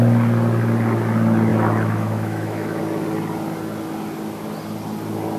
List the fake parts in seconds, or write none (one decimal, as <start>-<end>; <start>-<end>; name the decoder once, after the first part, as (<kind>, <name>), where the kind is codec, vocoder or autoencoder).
1.5-2.8 (autoencoder, DAC-VAE)